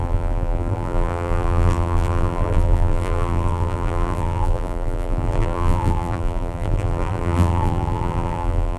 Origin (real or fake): fake